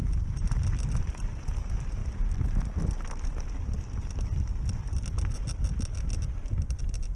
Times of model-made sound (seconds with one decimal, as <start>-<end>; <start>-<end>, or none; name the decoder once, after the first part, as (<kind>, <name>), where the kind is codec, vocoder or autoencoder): none